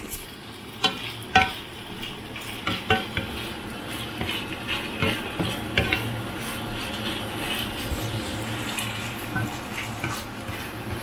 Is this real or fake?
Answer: real